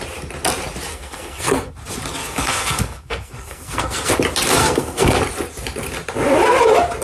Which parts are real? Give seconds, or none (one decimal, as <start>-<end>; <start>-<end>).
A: 0.0-0.9; 1.7-2.2; 4.1-4.6; 5.2-7.0